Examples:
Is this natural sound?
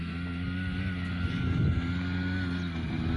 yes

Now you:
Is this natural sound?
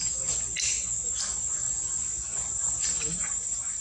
yes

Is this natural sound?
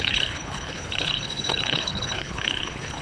no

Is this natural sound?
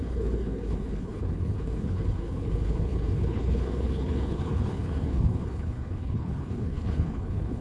no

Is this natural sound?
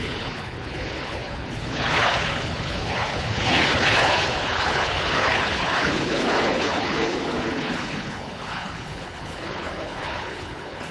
no